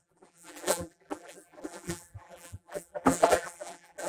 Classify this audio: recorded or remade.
remade